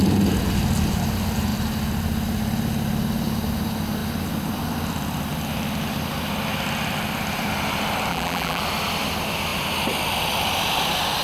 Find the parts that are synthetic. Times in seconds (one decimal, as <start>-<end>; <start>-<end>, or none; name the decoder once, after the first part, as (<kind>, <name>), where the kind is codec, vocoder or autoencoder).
8.1-8.6 (vocoder, BigVGAN v2)